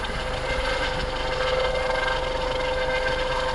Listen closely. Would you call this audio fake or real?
real